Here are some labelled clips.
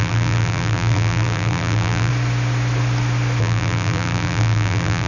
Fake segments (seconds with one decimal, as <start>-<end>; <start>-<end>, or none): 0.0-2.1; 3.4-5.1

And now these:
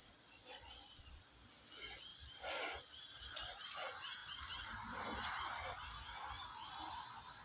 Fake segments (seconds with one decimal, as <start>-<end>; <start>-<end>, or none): 0.0-1.2

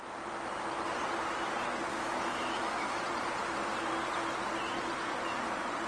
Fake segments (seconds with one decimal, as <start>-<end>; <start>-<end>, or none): 1.9-3.0

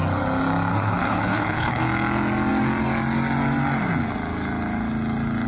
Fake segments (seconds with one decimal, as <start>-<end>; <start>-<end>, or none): 0.7-1.8